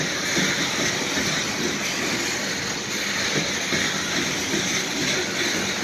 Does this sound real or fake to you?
real